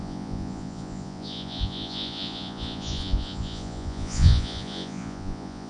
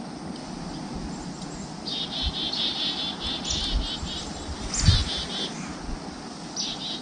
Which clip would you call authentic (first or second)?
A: second